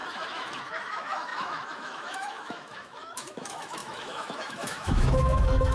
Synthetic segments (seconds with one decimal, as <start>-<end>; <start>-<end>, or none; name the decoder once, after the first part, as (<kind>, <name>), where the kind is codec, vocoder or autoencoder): 0.0-5.7 (autoencoder, DAC-VAE)